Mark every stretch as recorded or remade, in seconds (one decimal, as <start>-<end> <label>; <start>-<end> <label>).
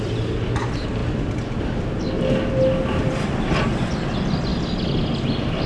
0.0-5.7 recorded